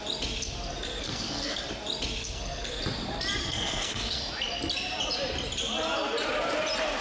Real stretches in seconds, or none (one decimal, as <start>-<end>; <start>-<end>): 0.0-1.0; 1.6-2.2; 2.8-3.4; 4.2-7.0